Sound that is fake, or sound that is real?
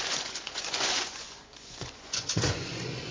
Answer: fake